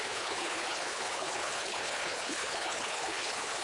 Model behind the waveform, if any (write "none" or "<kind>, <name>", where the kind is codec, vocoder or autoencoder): codec, HILCodec